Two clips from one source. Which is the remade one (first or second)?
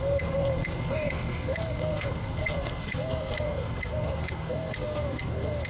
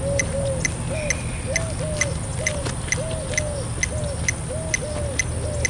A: first